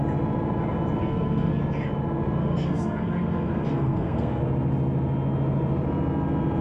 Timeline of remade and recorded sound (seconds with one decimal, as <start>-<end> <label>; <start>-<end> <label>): 0.0-1.0 recorded; 1.0-1.5 remade; 1.5-2.4 recorded; 2.4-4.4 remade; 4.4-6.6 recorded